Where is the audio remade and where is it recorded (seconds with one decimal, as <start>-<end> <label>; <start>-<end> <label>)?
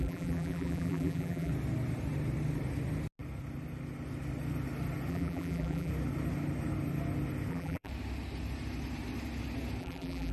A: 0.0-1.5 remade; 1.5-5.1 recorded; 5.1-5.9 remade; 5.9-7.5 recorded; 7.5-7.9 remade; 7.9-9.8 recorded; 9.8-10.3 remade